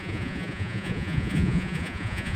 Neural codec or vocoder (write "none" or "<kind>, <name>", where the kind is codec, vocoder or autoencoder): vocoder, Vocos